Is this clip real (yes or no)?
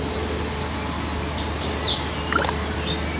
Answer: yes